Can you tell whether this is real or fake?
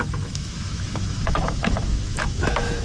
fake